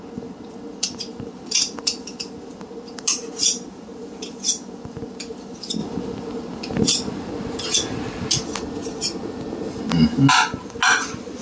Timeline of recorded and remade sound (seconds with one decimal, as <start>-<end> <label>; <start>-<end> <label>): 0.0-1.1 recorded; 1.1-2.3 remade; 2.3-11.4 recorded